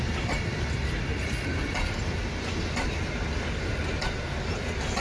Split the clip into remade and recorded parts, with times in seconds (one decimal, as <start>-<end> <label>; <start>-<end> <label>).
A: 0.0-5.0 recorded